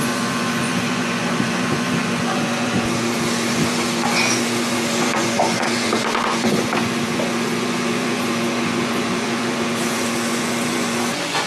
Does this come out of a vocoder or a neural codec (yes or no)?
yes